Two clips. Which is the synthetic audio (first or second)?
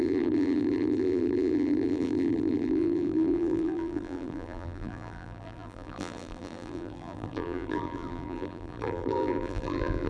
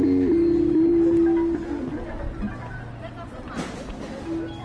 first